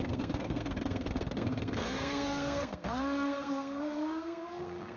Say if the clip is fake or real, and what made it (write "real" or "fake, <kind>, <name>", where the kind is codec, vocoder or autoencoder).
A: fake, codec, SNAC